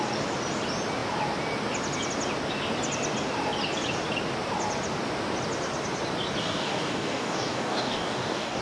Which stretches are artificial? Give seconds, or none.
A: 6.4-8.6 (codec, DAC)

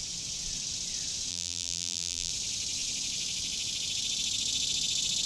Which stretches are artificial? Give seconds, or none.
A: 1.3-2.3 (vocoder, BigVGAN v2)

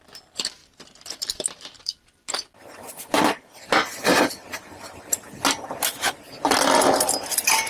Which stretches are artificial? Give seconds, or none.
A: 0.6-3.7 (vocoder, BigVGAN v2)

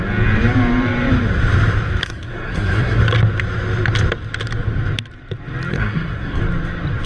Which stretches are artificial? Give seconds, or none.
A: 2.0-3.0 (codec, SNAC); 5.7-6.4

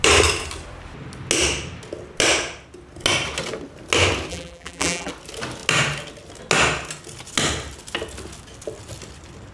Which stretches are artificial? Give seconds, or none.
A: 4.3-5.1 (vocoder, BigVGAN v2)